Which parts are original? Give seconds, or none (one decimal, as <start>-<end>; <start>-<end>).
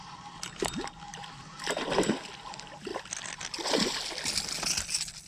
0.0-5.3